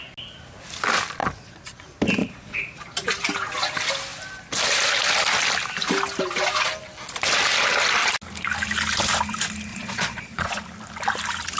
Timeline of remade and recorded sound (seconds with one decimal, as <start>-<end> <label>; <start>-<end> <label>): 0.0-1.2 recorded; 1.2-1.8 remade; 1.8-2.2 recorded; 2.2-3.1 remade; 3.1-9.7 recorded; 9.7-10.6 remade; 10.6-11.6 recorded